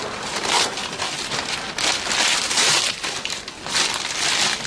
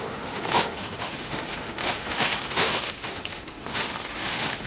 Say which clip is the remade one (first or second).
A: second